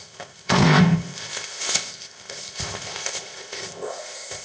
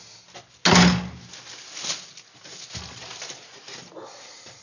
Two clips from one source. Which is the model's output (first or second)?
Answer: first